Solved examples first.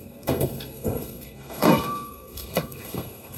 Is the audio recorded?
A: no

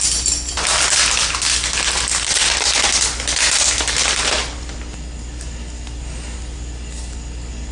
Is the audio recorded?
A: yes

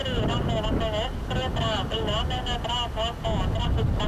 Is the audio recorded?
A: yes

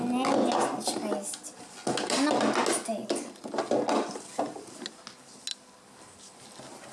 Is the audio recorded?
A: yes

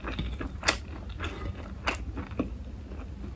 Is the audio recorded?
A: yes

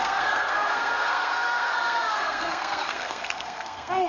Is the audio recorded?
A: no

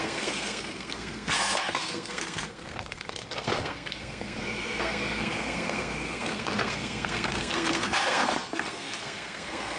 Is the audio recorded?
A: no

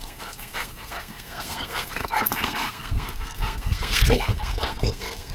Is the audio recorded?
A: no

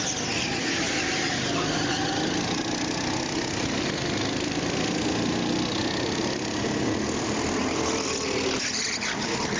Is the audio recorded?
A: yes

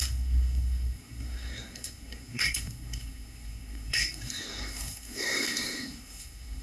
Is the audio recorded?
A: no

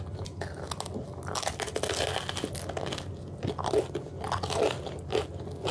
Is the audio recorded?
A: yes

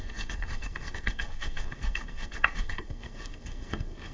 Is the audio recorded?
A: no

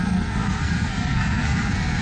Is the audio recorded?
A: no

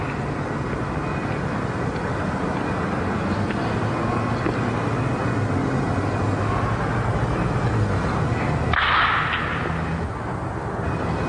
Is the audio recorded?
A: yes